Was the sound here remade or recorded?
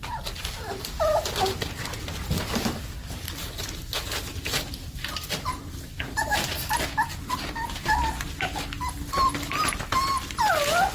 recorded